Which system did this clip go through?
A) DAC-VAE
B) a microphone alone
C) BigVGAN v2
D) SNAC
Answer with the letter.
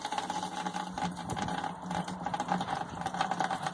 C